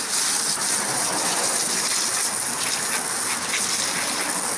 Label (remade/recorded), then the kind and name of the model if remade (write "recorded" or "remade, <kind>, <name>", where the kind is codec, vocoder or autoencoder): recorded